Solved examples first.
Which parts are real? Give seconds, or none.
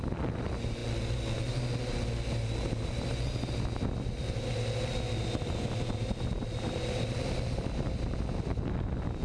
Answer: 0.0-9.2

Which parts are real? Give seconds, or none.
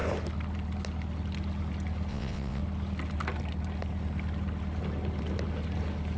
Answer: 0.0-2.1; 2.6-6.2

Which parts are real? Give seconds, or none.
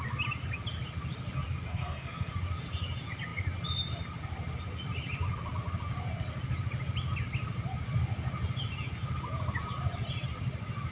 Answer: 0.0-1.7; 2.3-10.9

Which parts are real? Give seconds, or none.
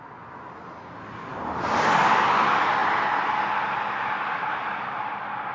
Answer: 0.0-5.5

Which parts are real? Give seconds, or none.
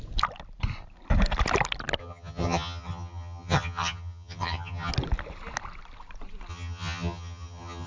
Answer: 0.0-2.0; 4.9-6.5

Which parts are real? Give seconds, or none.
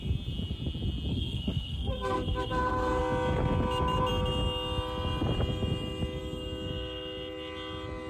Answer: 0.0-1.1; 3.0-8.1